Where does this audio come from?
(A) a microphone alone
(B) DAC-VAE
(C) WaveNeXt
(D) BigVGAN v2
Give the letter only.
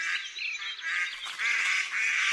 A